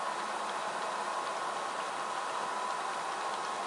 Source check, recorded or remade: recorded